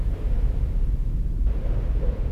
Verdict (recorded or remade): remade